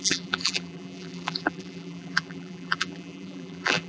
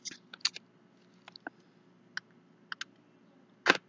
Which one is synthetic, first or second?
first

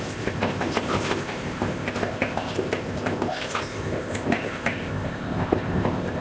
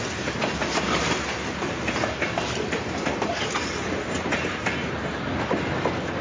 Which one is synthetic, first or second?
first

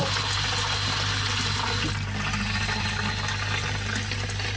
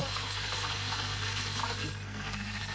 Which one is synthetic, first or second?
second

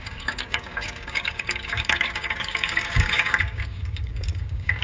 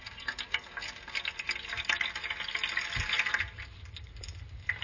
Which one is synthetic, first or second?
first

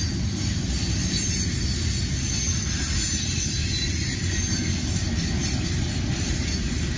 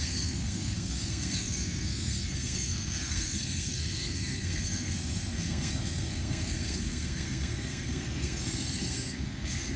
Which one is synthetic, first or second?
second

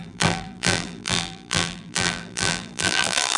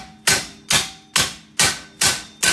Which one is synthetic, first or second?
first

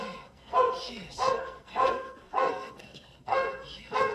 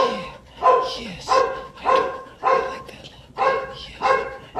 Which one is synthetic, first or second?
first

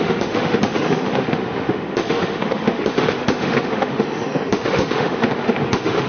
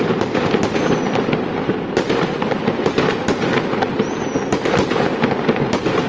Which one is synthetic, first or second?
first